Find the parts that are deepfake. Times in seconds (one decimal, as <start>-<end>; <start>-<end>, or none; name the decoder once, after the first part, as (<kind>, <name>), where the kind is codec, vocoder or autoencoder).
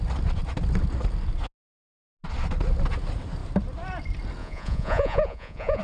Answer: 4.4-5.8 (vocoder, Vocos)